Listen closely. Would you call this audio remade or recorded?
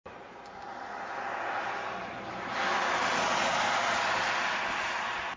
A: recorded